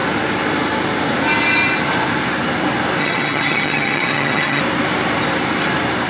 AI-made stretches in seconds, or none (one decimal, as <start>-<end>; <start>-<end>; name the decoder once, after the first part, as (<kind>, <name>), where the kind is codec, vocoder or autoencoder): 3.0-4.6 (vocoder, HiFi-GAN)